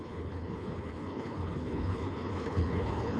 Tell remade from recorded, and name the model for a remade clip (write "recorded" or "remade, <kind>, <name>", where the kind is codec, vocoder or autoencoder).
remade, codec, HILCodec